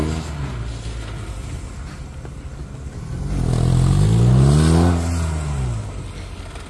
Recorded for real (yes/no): yes